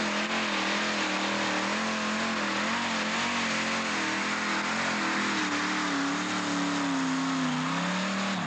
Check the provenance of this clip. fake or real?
real